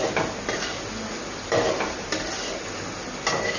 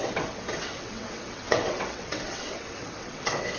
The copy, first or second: second